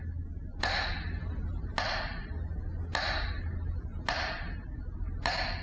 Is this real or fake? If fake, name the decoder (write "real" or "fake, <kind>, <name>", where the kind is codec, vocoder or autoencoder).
real